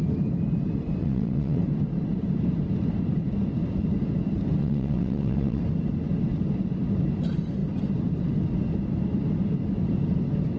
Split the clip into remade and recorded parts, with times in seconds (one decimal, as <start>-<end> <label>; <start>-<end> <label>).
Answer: 0.0-1.0 recorded; 1.0-1.6 remade; 1.6-4.6 recorded; 4.6-5.6 remade; 5.6-10.6 recorded